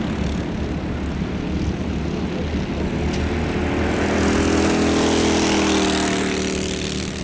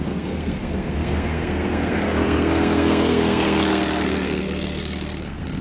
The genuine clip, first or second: first